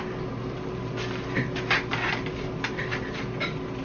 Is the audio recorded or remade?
recorded